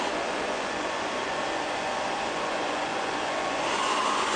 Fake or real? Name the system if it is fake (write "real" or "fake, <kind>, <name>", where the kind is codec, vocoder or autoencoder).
fake, vocoder, Vocos